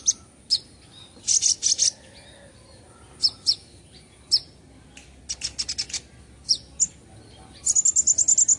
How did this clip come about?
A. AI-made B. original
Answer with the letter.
B